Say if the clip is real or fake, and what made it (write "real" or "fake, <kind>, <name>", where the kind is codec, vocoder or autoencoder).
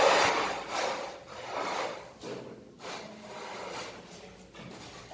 real